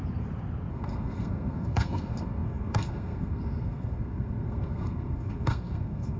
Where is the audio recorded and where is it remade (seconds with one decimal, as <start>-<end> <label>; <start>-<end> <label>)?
0.0-0.7 recorded; 0.7-6.2 remade